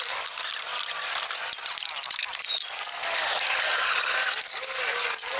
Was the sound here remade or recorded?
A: recorded